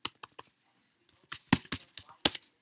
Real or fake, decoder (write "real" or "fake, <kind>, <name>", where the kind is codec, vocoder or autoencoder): real